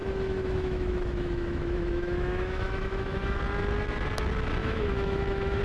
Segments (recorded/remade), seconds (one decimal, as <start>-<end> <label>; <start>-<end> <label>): 0.0-3.4 remade; 3.4-4.6 recorded; 4.6-5.6 remade